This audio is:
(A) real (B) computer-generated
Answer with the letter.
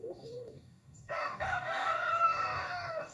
B